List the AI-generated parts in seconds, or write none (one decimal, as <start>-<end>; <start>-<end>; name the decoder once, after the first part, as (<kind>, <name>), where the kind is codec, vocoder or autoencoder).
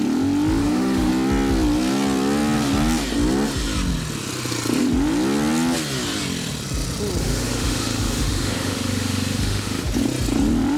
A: 0.6-1.1 (autoencoder, DAC-VAE); 7.2-9.9